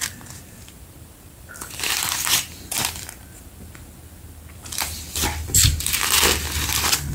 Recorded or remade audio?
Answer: remade